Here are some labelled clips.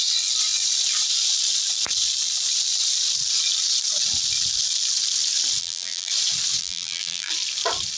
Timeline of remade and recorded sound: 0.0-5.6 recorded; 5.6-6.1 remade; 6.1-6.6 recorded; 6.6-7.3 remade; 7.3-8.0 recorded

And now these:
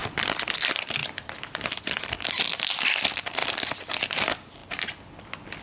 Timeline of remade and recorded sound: 0.0-3.4 remade; 3.4-3.9 recorded; 3.9-4.6 remade; 4.6-5.6 recorded

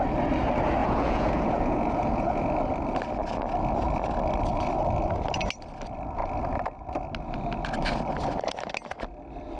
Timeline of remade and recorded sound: 0.0-0.8 recorded; 0.8-2.5 remade; 2.5-9.6 recorded

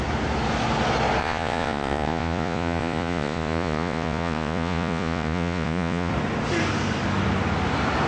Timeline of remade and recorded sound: 0.0-1.2 recorded; 1.2-6.1 remade; 6.1-8.1 recorded

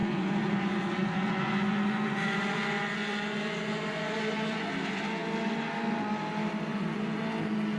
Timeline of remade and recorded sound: 0.0-4.7 remade; 4.7-6.7 recorded; 6.7-7.2 remade; 7.2-7.8 recorded

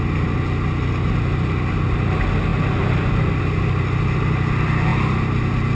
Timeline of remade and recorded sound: 0.0-5.7 recorded